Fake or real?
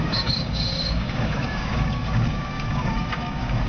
fake